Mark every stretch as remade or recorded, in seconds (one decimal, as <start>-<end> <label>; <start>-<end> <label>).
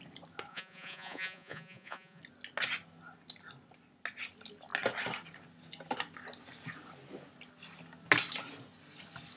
0.0-0.5 recorded; 0.5-2.2 remade; 2.2-9.4 recorded